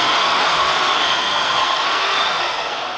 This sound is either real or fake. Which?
fake